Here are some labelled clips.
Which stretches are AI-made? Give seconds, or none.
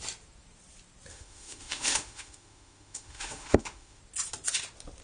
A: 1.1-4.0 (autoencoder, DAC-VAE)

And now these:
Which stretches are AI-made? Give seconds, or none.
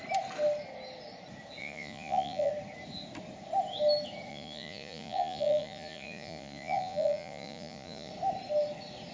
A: 1.6-2.5 (vocoder, Vocos); 4.3-8.1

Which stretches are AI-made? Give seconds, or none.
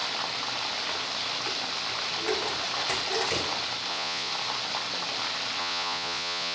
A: 3.9-4.3 (vocoder, Vocos); 5.6-6.5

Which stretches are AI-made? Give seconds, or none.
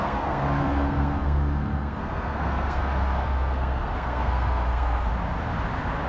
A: 0.0-5.1 (codec, SNAC)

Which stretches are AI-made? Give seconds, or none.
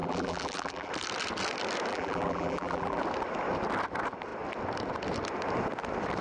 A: 0.0-0.9 (vocoder, BigVGAN v2); 1.9-3.0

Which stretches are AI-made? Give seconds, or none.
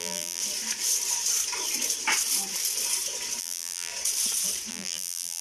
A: 0.0-0.4 (vocoder, BigVGAN v2); 3.4-3.9; 4.7-5.4